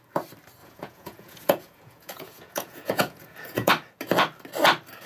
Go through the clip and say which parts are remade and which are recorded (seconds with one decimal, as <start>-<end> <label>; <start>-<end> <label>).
0.0-0.6 recorded; 0.6-3.7 remade; 3.7-5.1 recorded